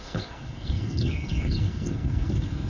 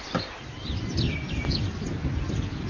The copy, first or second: first